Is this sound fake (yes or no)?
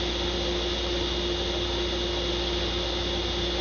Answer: no